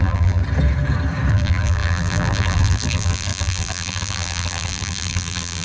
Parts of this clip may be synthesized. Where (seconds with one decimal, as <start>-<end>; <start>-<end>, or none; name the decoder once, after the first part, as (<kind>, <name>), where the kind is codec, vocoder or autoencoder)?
0.0-0.4 (vocoder, BigVGAN v2); 1.3-5.6